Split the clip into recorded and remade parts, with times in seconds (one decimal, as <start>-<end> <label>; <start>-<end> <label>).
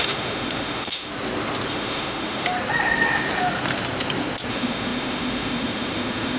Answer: 0.0-1.1 remade; 1.1-1.7 recorded; 1.7-2.5 remade; 2.5-4.5 recorded; 4.5-6.4 remade